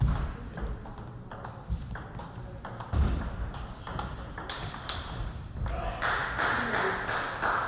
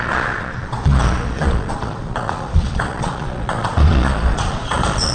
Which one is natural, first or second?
first